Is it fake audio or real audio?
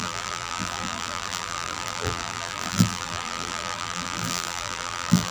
fake